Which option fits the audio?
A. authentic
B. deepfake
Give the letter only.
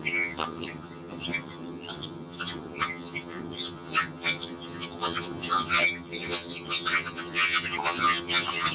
B